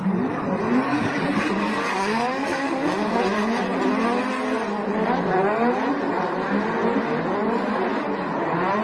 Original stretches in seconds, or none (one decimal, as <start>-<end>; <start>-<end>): 0.0-0.9; 3.2-8.8